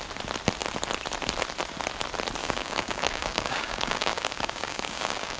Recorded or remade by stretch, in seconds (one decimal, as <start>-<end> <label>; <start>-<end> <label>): 0.0-2.4 recorded; 2.4-5.4 remade